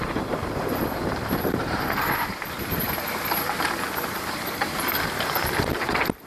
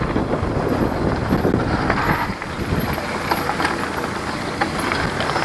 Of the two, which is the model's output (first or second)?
first